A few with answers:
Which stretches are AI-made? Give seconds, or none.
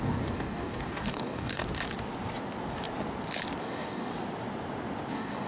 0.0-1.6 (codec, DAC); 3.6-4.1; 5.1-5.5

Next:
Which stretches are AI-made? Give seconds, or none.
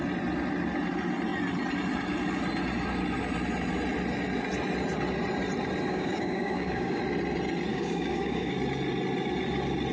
5.9-7.0 (codec, DAC); 7.7-8.5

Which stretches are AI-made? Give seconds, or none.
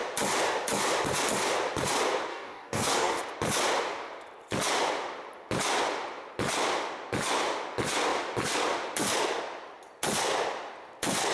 2.3-3.2 (codec, DAC)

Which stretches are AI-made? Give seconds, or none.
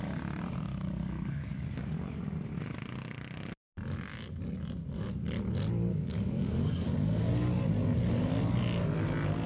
0.7-2.2 (codec, DAC); 5.9-7.2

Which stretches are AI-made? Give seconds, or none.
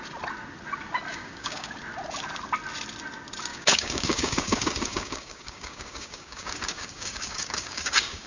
1.1-1.7 (codec, DAC); 3.5-8.3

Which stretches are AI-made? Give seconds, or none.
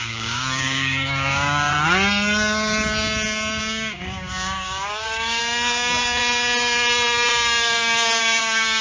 0.0-1.7 (codec, DAC); 3.6-5.4; 8.2-8.8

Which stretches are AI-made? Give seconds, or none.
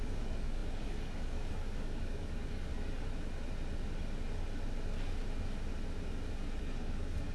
0.0-2.7 (codec, DAC); 6.6-7.3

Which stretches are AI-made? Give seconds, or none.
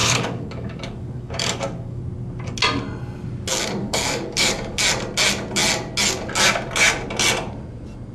0.0-2.0 (codec, DAC); 3.8-4.8